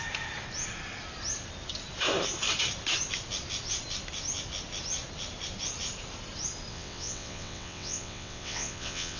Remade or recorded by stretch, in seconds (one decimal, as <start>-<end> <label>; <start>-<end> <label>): 0.0-6.7 recorded; 6.7-9.2 remade